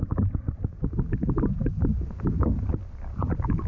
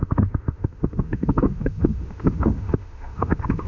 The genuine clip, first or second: first